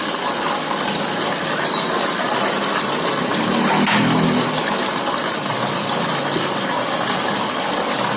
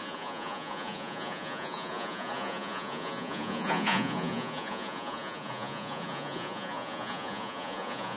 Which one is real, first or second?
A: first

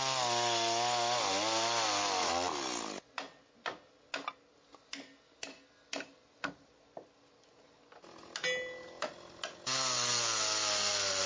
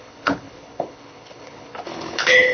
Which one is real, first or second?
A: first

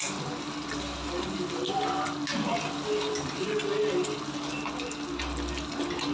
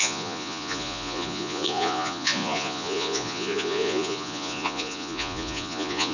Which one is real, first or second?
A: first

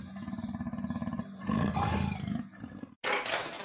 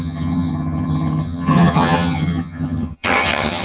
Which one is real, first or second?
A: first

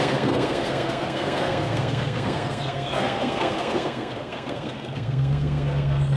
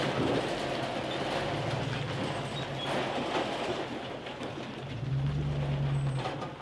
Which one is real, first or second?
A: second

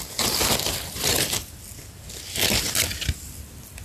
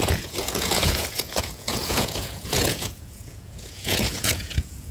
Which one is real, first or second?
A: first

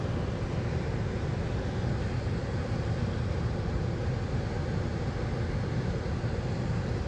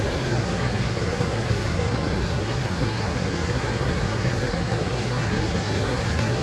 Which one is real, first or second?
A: first